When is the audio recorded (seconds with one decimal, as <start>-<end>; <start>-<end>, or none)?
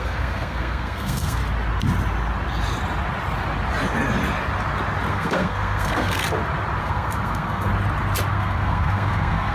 1.4-5.1; 6.2-6.8; 7.7-8.3